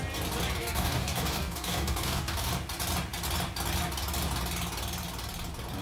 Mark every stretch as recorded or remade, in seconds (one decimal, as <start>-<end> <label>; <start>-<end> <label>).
0.0-0.6 recorded; 0.6-2.5 remade; 2.5-5.8 recorded